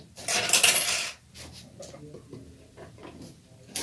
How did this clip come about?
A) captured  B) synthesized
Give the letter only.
A